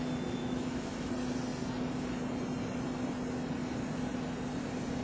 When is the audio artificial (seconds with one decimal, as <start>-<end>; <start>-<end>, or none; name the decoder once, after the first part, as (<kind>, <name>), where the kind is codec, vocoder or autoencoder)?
0.4-1.1 (autoencoder, DAC-VAE)